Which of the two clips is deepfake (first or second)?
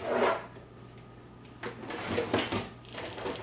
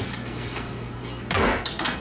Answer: second